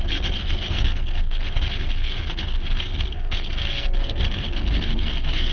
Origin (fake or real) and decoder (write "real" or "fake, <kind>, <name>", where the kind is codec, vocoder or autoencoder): fake, codec, SNAC